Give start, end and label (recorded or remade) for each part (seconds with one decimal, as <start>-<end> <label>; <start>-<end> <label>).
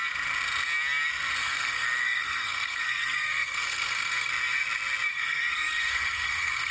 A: 0.0-1.4 recorded; 1.4-4.3 remade; 4.3-5.1 recorded; 5.1-6.7 remade